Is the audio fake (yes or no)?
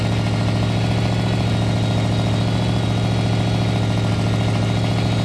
no